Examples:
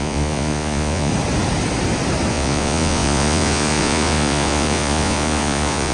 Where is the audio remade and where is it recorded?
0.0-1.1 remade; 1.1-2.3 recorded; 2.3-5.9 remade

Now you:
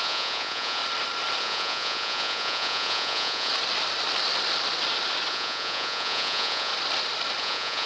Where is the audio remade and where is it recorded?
0.0-0.8 remade; 0.8-1.4 recorded; 1.4-3.5 remade; 3.5-5.3 recorded; 5.3-6.7 remade; 6.7-7.4 recorded; 7.4-7.9 remade

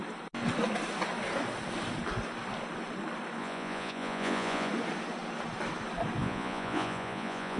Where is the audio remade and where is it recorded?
0.0-3.4 recorded; 3.4-4.7 remade; 4.7-6.2 recorded; 6.2-7.6 remade

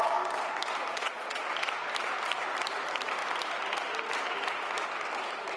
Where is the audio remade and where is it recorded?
0.0-0.9 recorded; 0.9-1.4 remade; 1.4-5.6 recorded

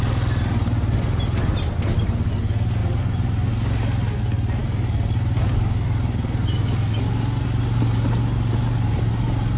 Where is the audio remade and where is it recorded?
0.0-9.6 recorded